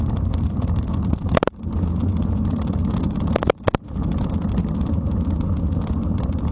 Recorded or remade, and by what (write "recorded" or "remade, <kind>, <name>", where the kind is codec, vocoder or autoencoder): recorded